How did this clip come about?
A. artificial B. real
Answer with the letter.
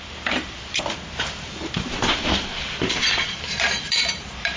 A